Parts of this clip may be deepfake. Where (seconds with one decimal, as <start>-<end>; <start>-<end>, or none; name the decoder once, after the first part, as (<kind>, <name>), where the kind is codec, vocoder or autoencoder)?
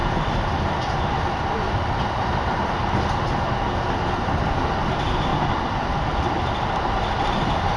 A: 1.4-2.8 (vocoder, BigVGAN v2); 4.4-5.3; 7.2-7.8